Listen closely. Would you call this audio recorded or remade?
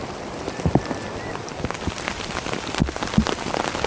recorded